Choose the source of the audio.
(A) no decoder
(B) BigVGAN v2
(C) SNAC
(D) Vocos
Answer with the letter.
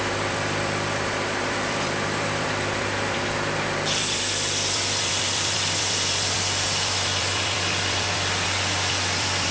B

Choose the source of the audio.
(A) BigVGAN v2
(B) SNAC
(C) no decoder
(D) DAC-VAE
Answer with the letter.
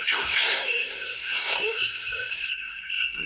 B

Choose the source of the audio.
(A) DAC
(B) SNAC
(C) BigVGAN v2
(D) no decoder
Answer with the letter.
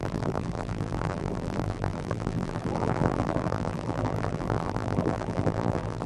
C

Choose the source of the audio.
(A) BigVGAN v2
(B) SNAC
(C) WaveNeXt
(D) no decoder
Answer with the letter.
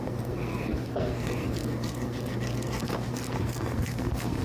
B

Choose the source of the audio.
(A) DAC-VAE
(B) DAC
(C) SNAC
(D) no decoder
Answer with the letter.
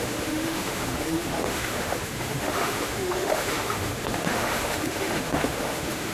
A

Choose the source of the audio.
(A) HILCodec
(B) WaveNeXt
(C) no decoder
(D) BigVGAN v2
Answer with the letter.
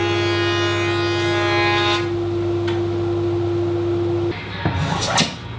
C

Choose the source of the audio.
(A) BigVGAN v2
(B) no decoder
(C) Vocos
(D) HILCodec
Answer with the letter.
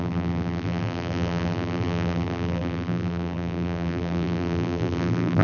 A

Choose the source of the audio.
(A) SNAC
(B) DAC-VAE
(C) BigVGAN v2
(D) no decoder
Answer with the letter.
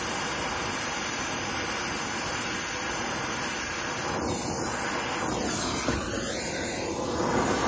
D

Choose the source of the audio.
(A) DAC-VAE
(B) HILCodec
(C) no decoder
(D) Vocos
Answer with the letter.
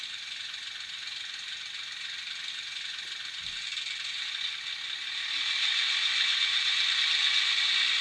C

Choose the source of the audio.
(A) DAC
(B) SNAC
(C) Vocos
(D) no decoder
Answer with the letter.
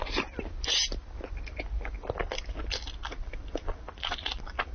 D